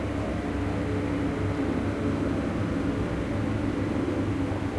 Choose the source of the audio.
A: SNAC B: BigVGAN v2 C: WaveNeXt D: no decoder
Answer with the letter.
D